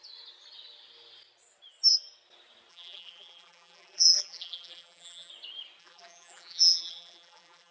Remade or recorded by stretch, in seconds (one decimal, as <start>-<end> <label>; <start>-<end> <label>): 0.0-2.7 recorded; 2.7-5.3 remade; 5.3-5.8 recorded; 5.8-7.7 remade